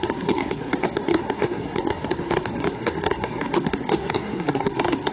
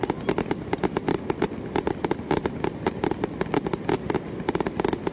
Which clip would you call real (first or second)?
second